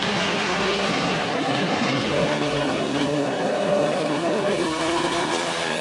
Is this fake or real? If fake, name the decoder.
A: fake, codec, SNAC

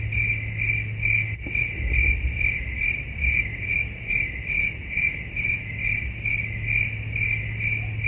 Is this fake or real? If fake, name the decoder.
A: real